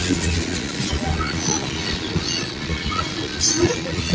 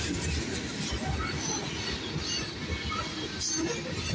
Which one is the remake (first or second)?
first